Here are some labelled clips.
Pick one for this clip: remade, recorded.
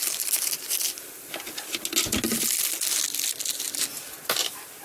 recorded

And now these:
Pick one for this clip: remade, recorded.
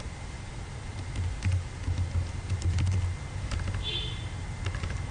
remade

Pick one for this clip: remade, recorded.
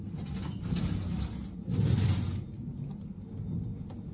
recorded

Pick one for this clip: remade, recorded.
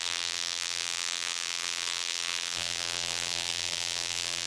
remade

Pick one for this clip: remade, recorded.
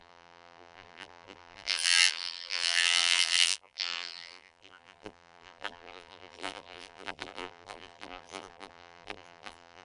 remade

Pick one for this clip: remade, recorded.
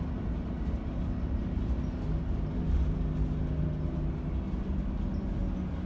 recorded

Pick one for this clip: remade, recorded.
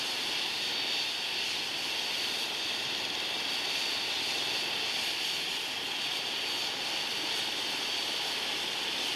recorded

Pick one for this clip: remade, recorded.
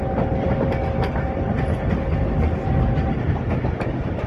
recorded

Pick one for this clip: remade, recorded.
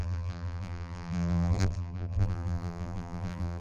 remade